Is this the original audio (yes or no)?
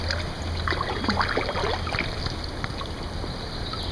yes